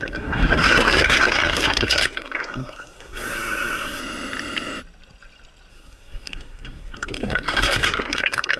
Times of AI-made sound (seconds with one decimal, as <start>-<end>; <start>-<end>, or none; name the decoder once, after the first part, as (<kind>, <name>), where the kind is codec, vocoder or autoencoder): 0.0-4.0 (codec, SNAC); 5.7-8.6